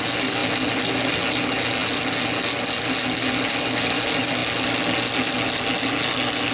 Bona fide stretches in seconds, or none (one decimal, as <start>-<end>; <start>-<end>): 0.0-6.5